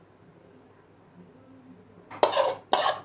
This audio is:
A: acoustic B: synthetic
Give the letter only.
A